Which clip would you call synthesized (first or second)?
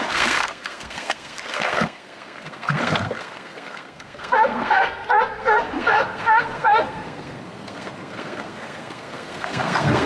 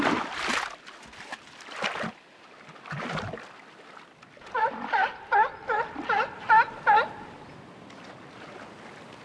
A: first